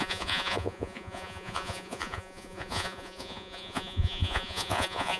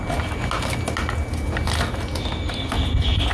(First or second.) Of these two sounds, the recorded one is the second